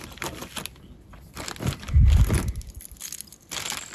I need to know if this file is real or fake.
real